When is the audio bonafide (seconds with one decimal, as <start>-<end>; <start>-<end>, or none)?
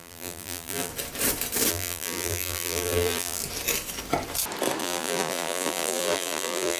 0.9-1.7; 3.4-4.8